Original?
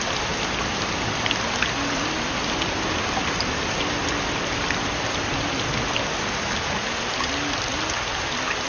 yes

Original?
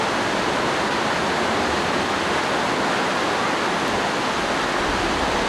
yes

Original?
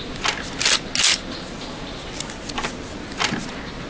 yes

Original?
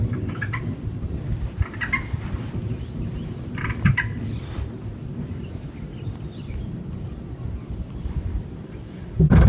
no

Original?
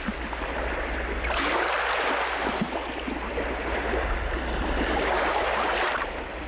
yes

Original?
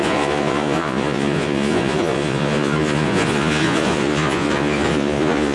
no